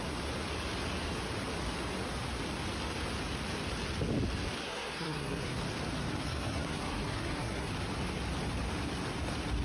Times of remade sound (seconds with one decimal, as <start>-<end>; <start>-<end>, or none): 4.6-5.6; 6.1-7.7